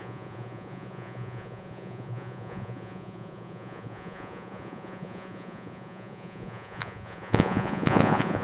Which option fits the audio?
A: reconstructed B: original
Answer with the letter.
A